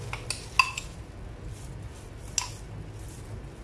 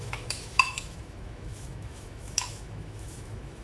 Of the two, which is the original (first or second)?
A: first